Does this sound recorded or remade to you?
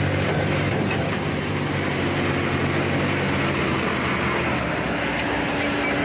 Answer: recorded